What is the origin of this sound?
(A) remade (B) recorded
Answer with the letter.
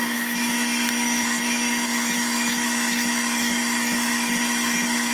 A